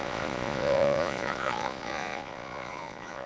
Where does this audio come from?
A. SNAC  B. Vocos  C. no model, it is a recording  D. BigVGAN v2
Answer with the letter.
B